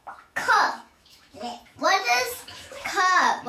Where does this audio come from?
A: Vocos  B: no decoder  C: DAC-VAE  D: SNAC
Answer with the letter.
C